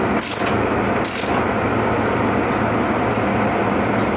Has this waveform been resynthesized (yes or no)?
no